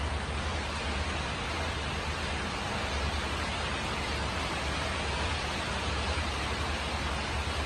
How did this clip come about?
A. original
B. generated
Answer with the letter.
A